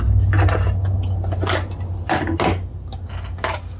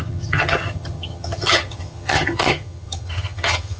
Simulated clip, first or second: second